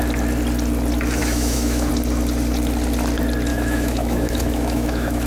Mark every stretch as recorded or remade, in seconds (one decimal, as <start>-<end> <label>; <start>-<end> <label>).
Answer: 0.0-1.2 recorded; 1.2-1.9 remade; 1.9-3.5 recorded; 3.5-5.3 remade